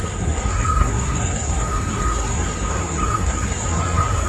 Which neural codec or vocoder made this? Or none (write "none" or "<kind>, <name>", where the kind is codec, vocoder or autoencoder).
codec, SNAC